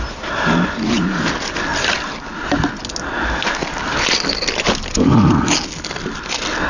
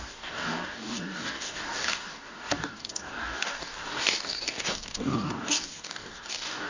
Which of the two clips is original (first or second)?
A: first